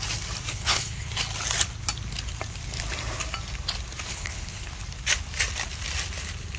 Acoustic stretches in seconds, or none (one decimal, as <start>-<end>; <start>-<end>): 0.0-0.5; 1.1-4.1; 4.7-6.6